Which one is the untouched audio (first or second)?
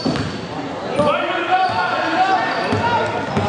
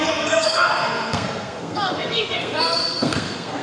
first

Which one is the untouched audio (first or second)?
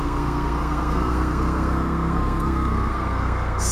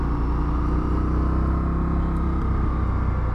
second